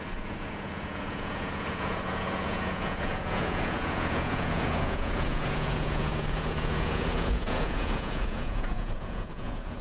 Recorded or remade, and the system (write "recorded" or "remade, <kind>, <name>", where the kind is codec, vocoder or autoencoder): remade, vocoder, Vocos